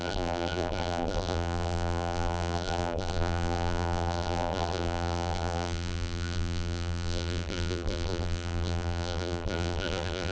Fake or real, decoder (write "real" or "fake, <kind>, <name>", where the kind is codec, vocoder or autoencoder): fake, vocoder, BigVGAN v2